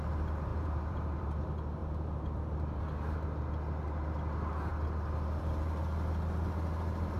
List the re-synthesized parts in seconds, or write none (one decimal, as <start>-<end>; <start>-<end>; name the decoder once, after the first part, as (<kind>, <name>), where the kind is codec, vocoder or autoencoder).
0.5-1.4 (vocoder, BigVGAN v2); 1.8-2.8